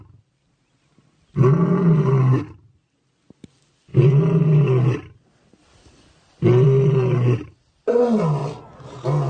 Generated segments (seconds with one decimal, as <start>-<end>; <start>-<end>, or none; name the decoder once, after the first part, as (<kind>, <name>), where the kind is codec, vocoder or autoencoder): none